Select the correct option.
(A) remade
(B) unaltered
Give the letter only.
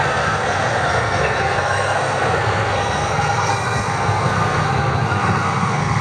A